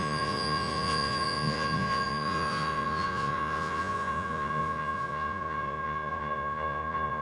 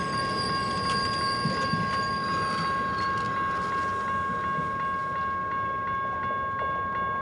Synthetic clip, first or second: first